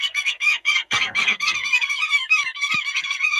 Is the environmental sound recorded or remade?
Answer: remade